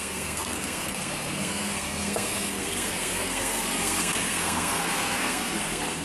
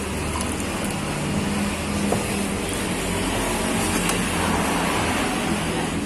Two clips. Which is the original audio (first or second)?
second